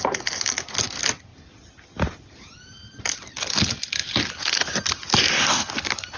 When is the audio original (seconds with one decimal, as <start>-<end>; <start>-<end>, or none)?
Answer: 0.0-6.2

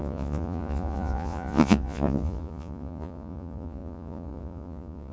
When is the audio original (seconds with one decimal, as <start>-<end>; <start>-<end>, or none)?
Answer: none